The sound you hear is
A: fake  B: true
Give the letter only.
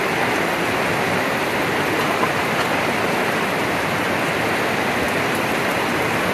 A